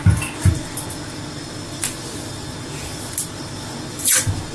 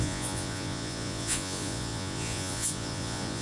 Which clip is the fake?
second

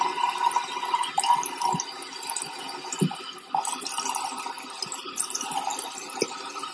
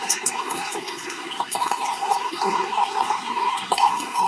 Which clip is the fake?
second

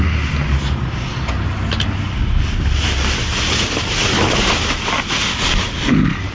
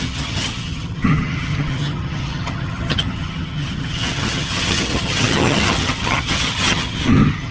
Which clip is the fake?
second